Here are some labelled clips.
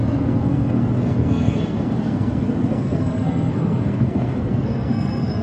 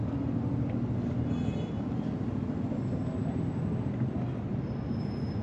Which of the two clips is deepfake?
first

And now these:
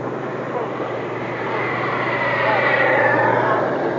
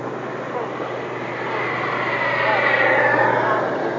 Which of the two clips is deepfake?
first